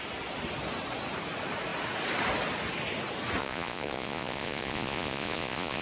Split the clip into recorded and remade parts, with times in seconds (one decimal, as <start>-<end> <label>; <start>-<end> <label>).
0.0-3.4 recorded; 3.4-5.8 remade